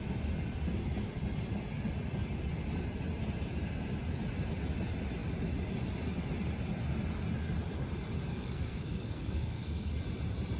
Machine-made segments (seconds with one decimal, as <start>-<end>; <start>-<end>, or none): 8.3-9.9